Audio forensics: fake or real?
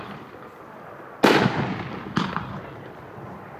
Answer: fake